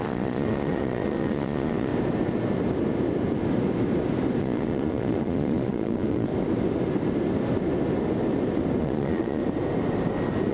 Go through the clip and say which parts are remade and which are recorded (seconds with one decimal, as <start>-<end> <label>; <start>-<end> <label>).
0.0-1.9 remade; 1.9-4.4 recorded; 4.4-6.3 remade; 6.3-8.8 recorded; 8.8-9.4 remade; 9.4-10.5 recorded